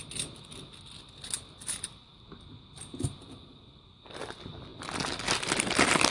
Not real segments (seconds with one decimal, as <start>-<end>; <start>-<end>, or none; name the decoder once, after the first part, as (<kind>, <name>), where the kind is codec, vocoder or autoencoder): none